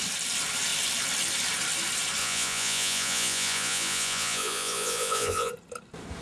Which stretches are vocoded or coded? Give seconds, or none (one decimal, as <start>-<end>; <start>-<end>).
2.2-5.5